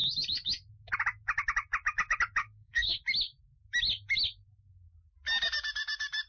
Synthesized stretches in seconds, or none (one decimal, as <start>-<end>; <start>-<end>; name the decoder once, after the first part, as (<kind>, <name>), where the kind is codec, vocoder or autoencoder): 2.4-3.0 (codec, SNAC)